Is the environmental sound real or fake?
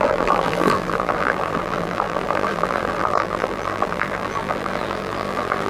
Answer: fake